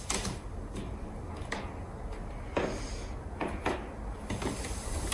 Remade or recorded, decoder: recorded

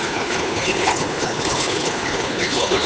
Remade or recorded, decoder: remade, codec, HILCodec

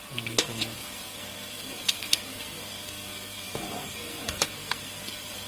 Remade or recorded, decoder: remade, codec, SNAC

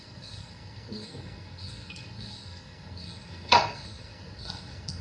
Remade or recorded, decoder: remade, codec, SNAC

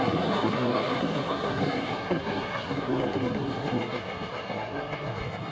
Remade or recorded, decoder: remade, codec, SNAC